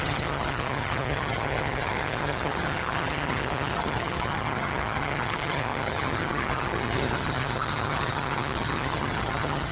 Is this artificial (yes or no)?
yes